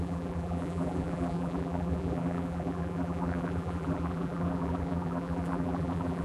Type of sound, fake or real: fake